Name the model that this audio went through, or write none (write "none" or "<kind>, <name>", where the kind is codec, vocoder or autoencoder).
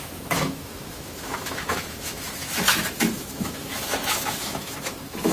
autoencoder, DAC-VAE